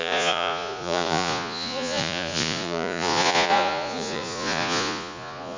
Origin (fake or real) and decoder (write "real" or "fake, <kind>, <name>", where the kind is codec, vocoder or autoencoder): fake, vocoder, Vocos